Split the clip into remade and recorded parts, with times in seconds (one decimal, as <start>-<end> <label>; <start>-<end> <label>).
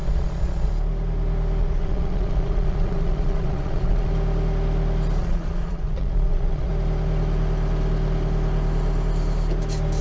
0.0-0.7 remade; 0.7-1.6 recorded; 1.6-4.1 remade; 4.1-5.2 recorded; 5.2-6.7 remade; 6.7-10.0 recorded